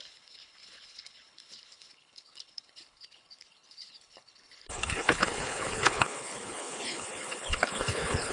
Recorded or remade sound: remade